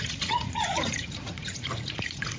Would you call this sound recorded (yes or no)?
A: no